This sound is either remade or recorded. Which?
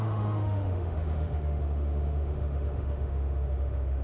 remade